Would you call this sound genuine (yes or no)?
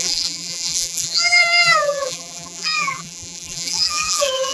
no